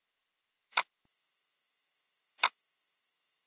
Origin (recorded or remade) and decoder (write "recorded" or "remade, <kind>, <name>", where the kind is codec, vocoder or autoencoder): remade, autoencoder, DAC-VAE